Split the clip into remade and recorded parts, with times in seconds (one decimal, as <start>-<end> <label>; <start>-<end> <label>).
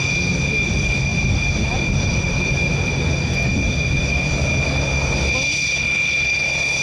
0.0-6.8 recorded